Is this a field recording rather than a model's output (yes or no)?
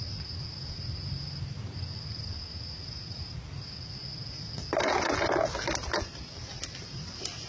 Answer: yes